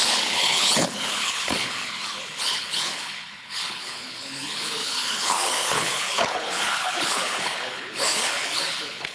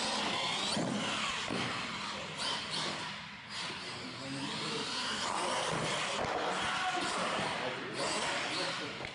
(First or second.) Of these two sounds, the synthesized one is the first